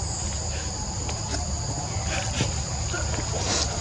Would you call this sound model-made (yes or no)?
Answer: no